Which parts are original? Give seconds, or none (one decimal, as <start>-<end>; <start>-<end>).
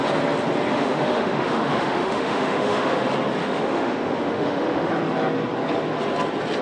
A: 0.0-0.7; 3.0-3.4; 4.9-6.6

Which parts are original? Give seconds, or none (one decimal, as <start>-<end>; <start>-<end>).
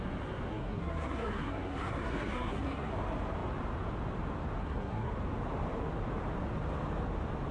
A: 0.0-0.5; 2.9-4.6; 5.1-7.5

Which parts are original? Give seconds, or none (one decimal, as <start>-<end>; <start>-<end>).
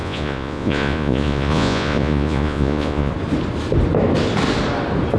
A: 3.1-5.2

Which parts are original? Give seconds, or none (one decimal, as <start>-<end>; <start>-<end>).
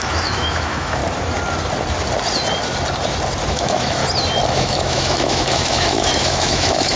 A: 1.0-3.5; 4.0-4.5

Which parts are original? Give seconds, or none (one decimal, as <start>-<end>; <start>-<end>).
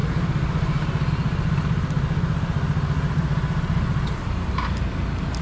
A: 0.0-5.4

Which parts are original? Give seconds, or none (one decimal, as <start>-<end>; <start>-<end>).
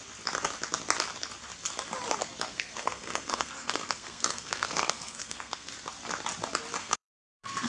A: 0.0-2.5; 5.7-6.8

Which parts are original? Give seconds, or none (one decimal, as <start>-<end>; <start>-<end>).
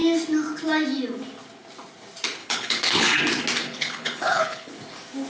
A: 0.0-2.4; 3.2-3.6; 4.7-5.3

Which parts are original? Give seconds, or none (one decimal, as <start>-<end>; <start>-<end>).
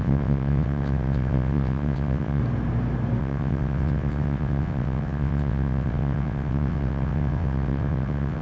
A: 2.4-3.2